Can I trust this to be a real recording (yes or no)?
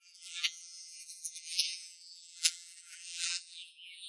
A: no